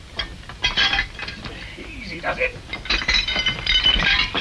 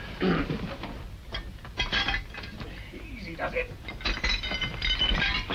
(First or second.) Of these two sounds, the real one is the second